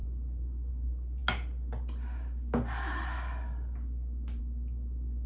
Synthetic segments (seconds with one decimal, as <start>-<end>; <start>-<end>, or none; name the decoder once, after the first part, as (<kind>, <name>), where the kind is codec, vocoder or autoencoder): none